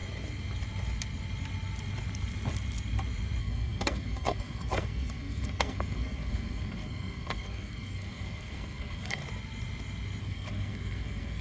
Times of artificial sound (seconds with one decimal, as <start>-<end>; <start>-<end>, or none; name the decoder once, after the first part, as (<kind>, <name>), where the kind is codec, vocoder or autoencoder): 3.4-9.2 (codec, SNAC); 10.2-11.4